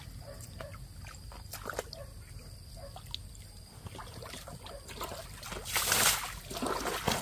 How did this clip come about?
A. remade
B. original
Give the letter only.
B